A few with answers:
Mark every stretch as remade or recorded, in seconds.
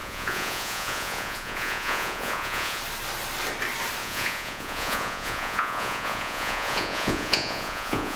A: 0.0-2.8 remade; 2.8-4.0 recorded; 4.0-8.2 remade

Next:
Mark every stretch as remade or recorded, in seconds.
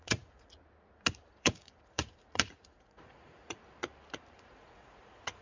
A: 0.0-0.5 remade; 0.5-1.3 recorded; 1.3-3.6 remade; 3.6-4.4 recorded; 4.4-5.4 remade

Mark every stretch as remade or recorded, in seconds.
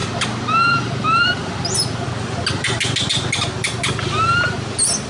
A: 0.0-5.1 recorded